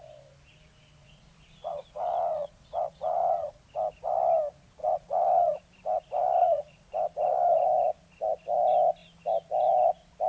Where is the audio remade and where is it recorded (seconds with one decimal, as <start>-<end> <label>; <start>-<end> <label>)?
0.0-1.0 recorded; 1.0-3.6 remade; 3.6-4.8 recorded; 4.8-5.6 remade; 5.6-6.4 recorded; 6.4-6.9 remade; 6.9-10.3 recorded